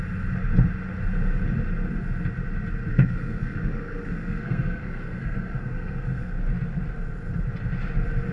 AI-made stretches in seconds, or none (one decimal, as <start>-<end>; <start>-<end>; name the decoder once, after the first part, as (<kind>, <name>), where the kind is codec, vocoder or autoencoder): 2.9-6.4 (codec, SNAC)